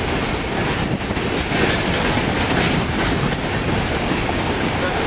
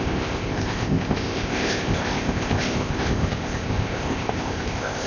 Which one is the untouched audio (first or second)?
first